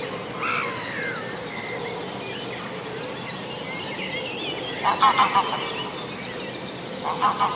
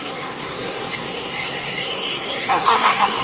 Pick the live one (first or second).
first